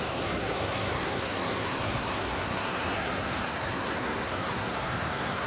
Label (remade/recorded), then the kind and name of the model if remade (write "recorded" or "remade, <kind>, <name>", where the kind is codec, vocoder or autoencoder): remade, codec, SNAC